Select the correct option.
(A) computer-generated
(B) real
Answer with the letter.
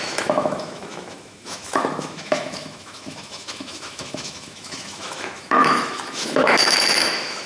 A